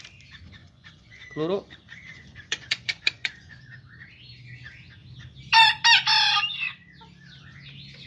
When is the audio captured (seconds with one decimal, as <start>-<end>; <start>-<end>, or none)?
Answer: 0.0-0.6; 3.6-8.1